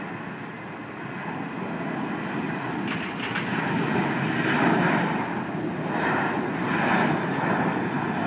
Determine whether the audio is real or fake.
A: real